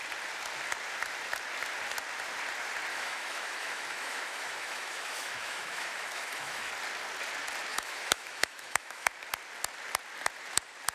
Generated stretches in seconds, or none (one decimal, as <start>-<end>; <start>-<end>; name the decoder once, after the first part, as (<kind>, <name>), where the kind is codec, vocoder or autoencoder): 2.9-6.7 (autoencoder, DAC-VAE); 7.7-9.1